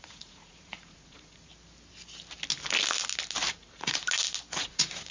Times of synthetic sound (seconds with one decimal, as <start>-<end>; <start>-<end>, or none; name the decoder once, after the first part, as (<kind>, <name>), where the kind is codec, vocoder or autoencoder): 0.0-1.5 (vocoder, Vocos); 3.5-4.0; 4.6-5.1